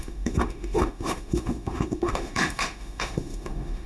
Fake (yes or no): yes